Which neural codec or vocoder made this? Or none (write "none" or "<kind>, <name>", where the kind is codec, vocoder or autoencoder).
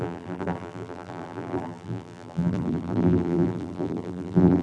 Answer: vocoder, BigVGAN v2